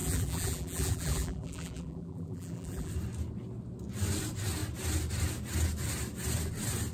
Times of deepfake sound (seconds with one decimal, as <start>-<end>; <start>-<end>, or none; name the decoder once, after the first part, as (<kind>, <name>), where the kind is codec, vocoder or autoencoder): 0.0-2.9 (vocoder, BigVGAN v2)